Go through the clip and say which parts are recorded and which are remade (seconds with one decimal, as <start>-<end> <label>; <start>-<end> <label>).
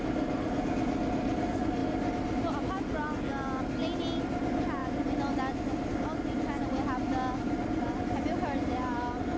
0.0-9.4 recorded